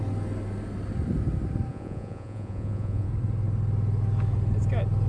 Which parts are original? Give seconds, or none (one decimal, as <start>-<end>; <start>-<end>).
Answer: 0.0-1.7; 3.1-5.1